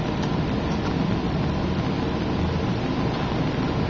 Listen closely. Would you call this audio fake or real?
real